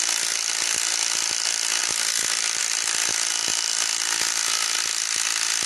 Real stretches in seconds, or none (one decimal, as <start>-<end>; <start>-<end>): 0.0-5.7